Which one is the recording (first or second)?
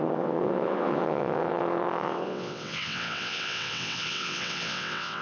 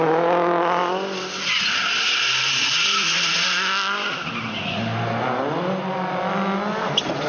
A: second